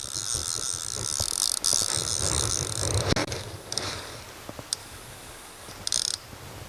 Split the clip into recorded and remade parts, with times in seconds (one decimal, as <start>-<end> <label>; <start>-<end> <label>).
0.0-3.2 recorded; 3.2-4.2 remade; 4.2-4.8 recorded; 4.8-5.7 remade; 5.7-6.7 recorded